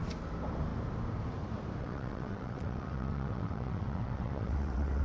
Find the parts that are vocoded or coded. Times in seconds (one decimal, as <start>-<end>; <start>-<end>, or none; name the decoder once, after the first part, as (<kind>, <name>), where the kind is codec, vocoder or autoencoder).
1.8-5.0 (vocoder, WaveNeXt)